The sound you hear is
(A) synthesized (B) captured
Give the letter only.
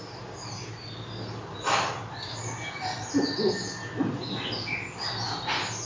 B